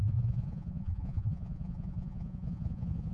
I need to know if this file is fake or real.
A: fake